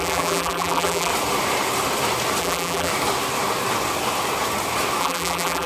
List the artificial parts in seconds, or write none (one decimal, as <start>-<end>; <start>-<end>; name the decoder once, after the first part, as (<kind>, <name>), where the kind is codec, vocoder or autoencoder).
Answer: 0.0-1.1 (vocoder, BigVGAN v2); 2.4-2.9; 5.0-5.7